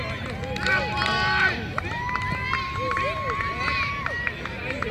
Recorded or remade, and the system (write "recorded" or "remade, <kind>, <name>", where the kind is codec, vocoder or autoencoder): recorded